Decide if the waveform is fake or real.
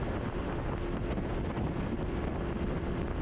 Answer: real